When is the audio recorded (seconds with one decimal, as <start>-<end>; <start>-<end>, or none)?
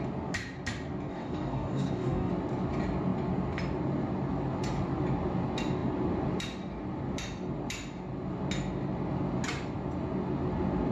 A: 0.0-1.1; 2.3-10.9